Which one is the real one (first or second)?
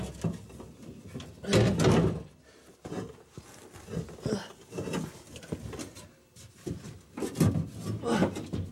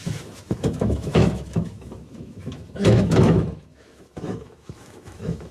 first